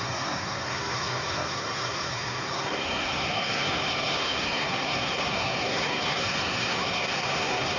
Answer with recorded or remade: remade